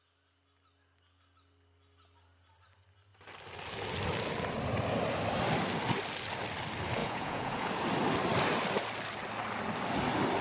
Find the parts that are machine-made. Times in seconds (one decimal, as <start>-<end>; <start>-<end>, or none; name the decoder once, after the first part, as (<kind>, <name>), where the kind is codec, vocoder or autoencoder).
7.0-7.7 (vocoder, Vocos)